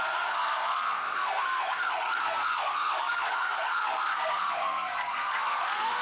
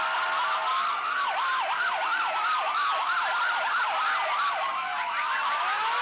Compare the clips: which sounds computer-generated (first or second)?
first